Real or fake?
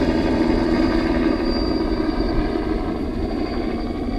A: fake